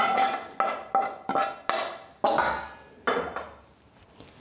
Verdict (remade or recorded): recorded